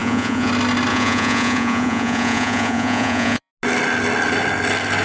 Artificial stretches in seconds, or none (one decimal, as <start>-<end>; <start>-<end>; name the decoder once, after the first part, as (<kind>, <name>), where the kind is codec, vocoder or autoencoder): 0.0-0.5 (vocoder, Vocos); 0.9-3.5

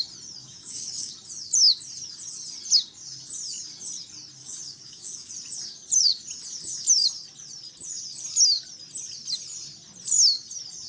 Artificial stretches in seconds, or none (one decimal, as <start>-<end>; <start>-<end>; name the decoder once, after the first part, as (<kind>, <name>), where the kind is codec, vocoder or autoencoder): 0.4-1.1 (codec, DAC); 4.4-5.3

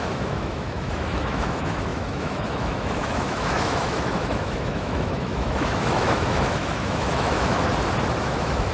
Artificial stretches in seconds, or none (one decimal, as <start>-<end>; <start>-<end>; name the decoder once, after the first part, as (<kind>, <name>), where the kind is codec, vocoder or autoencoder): 0.0-7.7 (autoencoder, DAC-VAE); 8.2-8.7

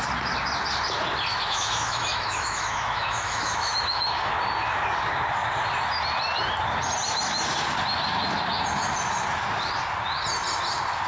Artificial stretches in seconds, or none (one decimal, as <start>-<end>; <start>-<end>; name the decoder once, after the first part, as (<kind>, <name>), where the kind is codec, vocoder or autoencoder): 1.3-4.3 (autoencoder, DAC-VAE)